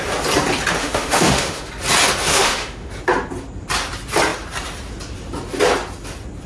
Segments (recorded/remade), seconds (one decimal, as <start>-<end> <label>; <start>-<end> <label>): 0.0-0.8 recorded; 0.8-1.7 remade; 1.7-2.3 recorded; 2.3-2.9 remade; 2.9-6.5 recorded